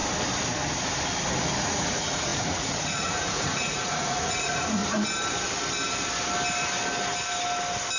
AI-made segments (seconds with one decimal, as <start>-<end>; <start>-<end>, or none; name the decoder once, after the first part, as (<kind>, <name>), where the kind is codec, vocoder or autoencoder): 1.6-4.8 (vocoder, Vocos)

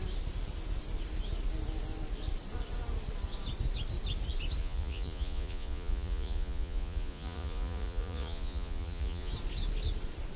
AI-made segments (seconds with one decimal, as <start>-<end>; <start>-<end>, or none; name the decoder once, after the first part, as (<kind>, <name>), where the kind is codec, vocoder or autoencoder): 4.6-9.3 (vocoder, Vocos)

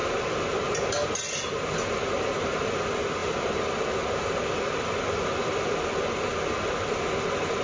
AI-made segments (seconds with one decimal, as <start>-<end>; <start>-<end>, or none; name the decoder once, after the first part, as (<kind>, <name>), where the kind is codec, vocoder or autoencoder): none

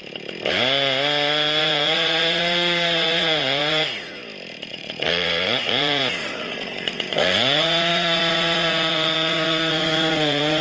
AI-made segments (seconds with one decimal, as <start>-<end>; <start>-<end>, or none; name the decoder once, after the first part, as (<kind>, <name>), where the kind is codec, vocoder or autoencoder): 1.6-4.2 (vocoder, Vocos); 4.7-10.6

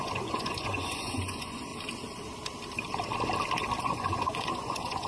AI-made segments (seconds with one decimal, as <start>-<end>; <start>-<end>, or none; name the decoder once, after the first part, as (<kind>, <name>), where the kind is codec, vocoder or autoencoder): 0.0-1.7 (vocoder, Vocos); 3.8-5.1

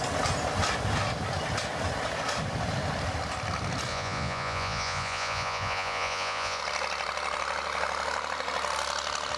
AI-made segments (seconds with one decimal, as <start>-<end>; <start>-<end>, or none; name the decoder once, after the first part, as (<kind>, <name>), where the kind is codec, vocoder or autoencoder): 3.9-6.6 (vocoder, Vocos)